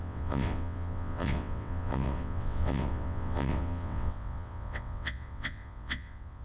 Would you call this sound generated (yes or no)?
yes